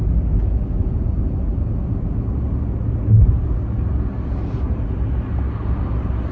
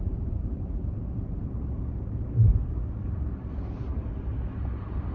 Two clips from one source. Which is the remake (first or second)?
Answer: second